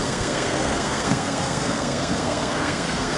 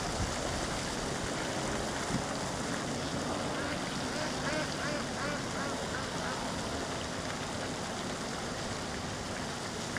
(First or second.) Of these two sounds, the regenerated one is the first